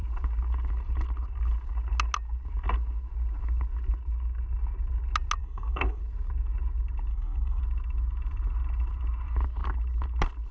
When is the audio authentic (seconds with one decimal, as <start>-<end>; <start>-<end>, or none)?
0.0-5.4; 6.0-7.1; 7.6-10.5

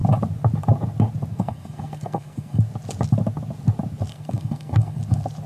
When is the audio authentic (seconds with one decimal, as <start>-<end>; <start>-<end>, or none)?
0.0-1.3; 2.6-4.1; 5.0-5.5